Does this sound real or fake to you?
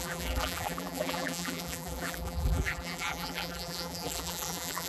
fake